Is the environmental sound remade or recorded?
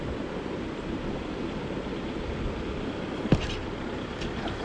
recorded